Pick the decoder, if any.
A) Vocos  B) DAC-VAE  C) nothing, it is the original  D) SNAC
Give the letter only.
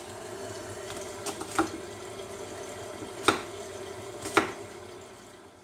C